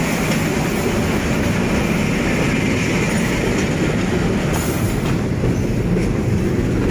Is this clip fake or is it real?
real